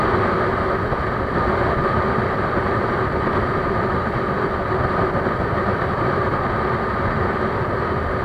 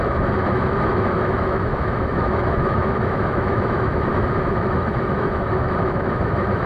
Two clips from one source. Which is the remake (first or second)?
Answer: second